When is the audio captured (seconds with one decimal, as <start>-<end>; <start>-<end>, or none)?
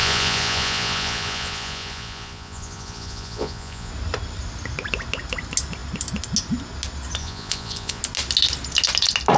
3.9-7.2; 8.0-9.4